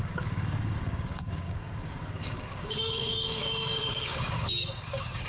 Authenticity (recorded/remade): remade